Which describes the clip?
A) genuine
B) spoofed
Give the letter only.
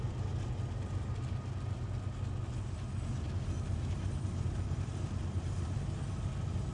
A